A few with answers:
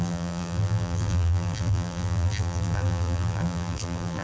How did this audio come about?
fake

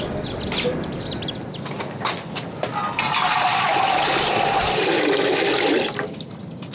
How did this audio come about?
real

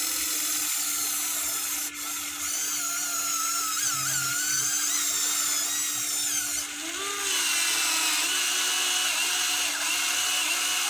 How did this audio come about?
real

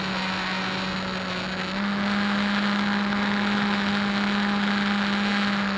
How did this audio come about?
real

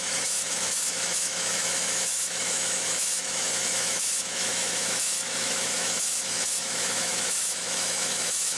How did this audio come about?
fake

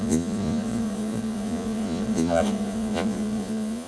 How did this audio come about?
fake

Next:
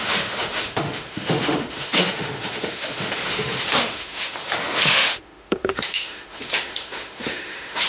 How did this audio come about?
fake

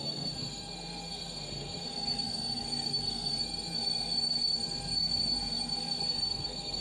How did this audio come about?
fake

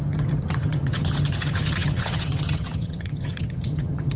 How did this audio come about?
fake